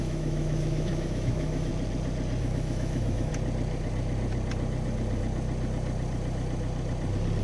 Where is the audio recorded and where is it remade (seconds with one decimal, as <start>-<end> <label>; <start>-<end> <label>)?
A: 0.0-1.7 remade; 1.7-2.4 recorded; 2.4-3.3 remade; 3.3-7.4 recorded